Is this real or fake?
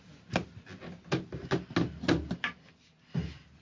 real